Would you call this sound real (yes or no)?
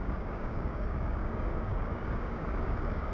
no